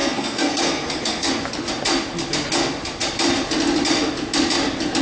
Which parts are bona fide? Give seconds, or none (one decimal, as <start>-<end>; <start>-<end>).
1.3-5.0